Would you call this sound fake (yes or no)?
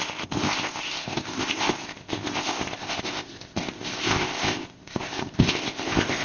yes